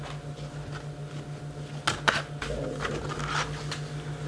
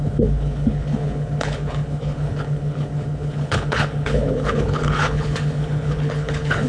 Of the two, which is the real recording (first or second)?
first